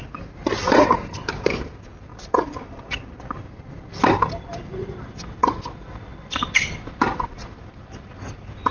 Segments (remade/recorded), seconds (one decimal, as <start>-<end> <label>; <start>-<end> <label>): 0.0-0.7 recorded; 0.7-1.7 remade; 1.7-2.1 recorded; 2.1-2.9 remade; 2.9-4.5 recorded; 4.5-5.1 remade; 5.1-8.7 recorded